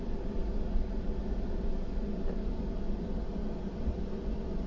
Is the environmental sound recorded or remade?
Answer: recorded